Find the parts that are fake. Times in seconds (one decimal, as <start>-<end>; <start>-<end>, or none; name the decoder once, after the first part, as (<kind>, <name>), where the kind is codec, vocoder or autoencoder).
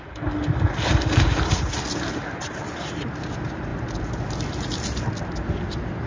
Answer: none